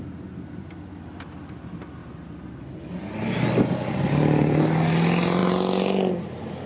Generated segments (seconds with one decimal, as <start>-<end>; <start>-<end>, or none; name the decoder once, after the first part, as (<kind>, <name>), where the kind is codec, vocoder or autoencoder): none